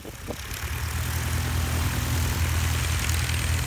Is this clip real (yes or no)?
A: yes